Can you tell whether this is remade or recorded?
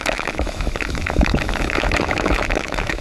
remade